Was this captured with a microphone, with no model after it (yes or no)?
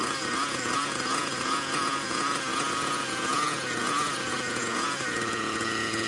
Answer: no